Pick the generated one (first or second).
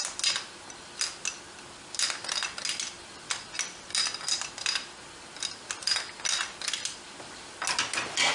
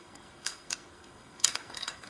second